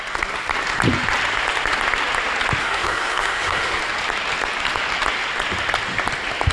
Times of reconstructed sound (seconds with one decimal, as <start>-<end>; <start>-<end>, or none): 2.6-3.8